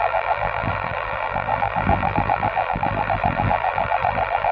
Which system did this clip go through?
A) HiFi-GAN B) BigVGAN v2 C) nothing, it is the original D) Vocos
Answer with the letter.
B